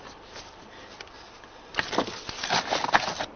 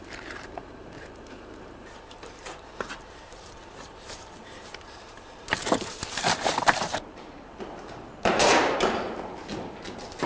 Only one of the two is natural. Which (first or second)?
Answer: first